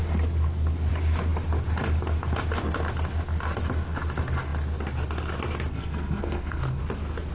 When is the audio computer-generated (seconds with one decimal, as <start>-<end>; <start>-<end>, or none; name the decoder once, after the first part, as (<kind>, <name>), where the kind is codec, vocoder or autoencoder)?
5.7-6.8 (codec, SNAC)